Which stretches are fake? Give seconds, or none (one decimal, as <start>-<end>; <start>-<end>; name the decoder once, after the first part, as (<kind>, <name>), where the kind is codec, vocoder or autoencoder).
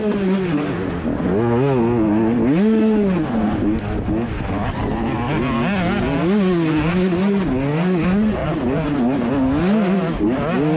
none